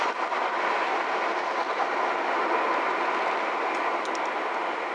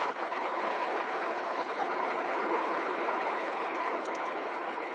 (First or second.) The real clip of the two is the first